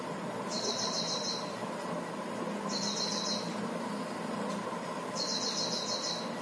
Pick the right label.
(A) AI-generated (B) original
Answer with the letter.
B